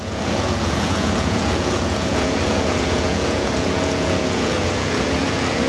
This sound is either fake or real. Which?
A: fake